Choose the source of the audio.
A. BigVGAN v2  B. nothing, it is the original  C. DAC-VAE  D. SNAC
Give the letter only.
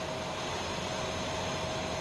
B